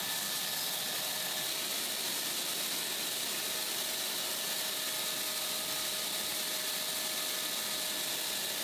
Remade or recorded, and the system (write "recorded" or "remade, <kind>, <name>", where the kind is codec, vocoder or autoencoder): recorded